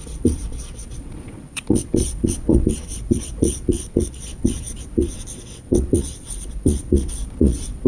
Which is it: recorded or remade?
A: remade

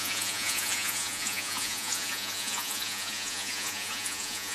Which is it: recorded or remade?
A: remade